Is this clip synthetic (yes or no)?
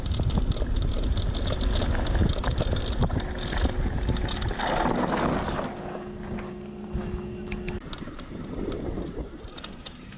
no